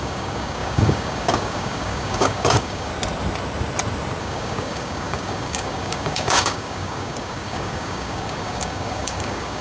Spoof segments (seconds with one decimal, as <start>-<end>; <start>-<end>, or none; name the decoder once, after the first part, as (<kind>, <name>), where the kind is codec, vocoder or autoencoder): 0.0-2.9 (codec, DAC); 4.2-9.6